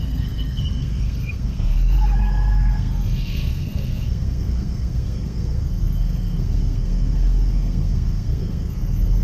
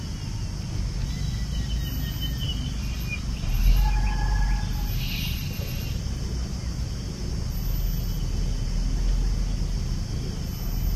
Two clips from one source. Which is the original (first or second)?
second